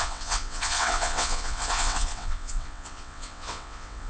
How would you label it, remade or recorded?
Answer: remade